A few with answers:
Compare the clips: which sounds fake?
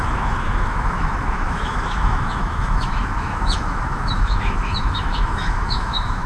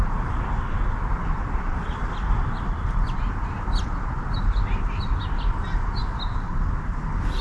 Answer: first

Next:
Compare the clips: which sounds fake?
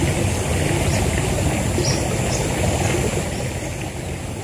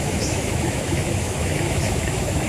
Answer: second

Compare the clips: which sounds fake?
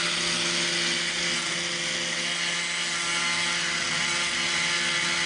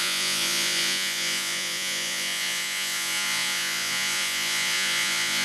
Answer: second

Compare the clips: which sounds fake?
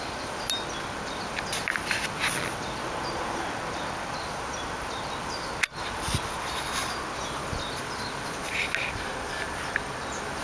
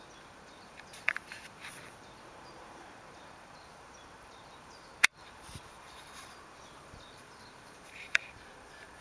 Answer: second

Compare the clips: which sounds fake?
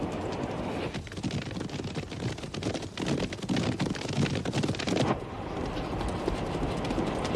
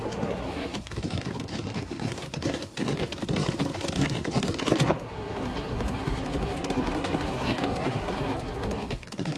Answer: second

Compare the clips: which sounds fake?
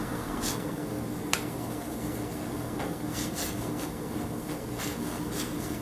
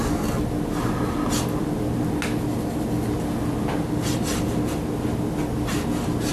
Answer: first